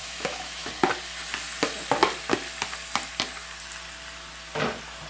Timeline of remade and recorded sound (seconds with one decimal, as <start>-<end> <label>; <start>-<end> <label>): 0.0-0.7 remade; 0.7-5.1 recorded